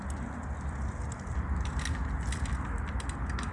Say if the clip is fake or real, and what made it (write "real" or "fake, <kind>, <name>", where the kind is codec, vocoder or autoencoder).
real